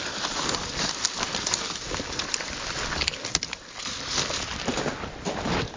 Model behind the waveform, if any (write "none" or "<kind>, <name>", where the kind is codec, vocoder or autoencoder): none